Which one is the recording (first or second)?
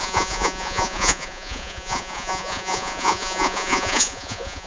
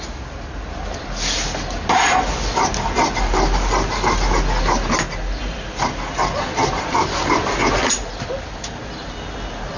second